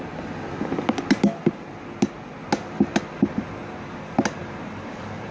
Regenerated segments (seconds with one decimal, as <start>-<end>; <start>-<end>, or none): 4.4-5.3

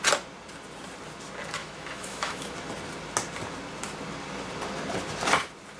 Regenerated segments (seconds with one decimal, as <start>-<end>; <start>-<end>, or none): 1.6-2.5

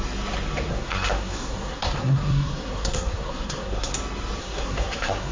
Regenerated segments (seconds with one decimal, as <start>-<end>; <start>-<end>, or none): 0.7-3.9; 4.4-5.3

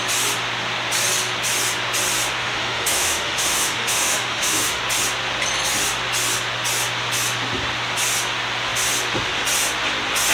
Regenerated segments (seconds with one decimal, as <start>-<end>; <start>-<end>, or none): 2.4-4.8

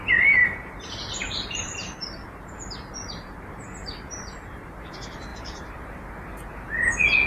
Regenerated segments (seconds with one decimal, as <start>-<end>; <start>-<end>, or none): 0.4-4.8; 5.3-6.1